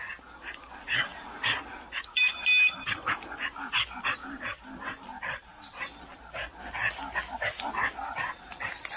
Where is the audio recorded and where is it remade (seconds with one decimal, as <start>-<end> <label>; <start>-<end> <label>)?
0.0-9.0 recorded